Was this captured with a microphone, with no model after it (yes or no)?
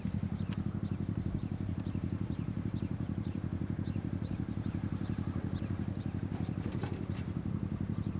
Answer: no